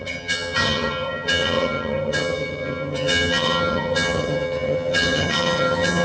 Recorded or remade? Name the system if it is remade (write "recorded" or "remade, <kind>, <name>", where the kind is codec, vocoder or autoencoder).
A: remade, vocoder, HiFi-GAN